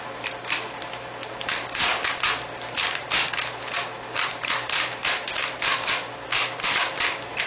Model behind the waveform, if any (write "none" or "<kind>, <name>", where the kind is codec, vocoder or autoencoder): none